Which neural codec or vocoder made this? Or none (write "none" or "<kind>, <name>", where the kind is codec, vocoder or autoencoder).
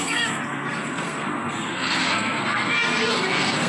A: codec, SNAC